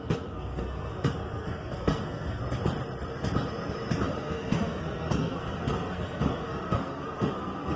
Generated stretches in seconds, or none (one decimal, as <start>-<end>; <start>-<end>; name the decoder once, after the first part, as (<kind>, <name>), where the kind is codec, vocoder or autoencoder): 0.0-2.4 (codec, SNAC); 4.2-7.8